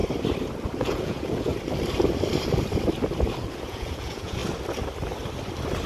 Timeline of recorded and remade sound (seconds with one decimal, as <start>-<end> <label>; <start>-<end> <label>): 0.0-0.8 recorded; 0.8-1.5 remade; 1.5-3.7 recorded; 3.7-4.4 remade; 4.4-5.9 recorded